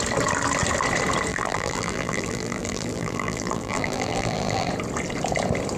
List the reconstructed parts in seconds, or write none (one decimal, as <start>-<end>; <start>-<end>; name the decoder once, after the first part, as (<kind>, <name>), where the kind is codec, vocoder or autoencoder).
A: 1.3-4.7 (vocoder, BigVGAN v2)